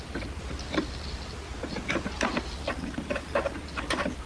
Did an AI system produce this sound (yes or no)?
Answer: no